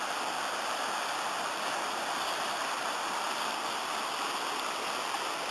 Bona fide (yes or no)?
no